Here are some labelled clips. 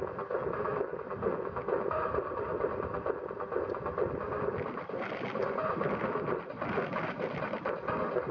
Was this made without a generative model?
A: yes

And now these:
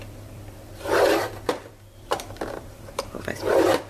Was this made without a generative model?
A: no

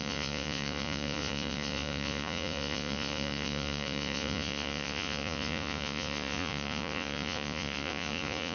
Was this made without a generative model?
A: no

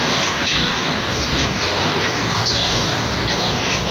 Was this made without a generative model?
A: no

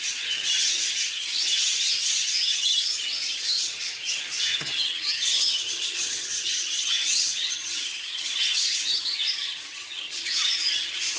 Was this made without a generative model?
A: no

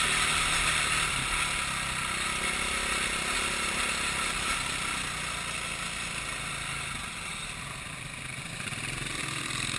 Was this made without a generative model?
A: yes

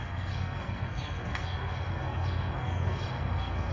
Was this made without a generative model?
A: no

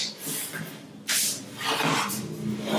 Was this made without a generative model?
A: yes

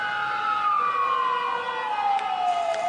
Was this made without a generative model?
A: yes